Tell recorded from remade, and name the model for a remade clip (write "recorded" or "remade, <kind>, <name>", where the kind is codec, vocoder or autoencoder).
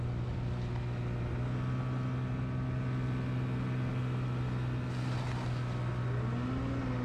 recorded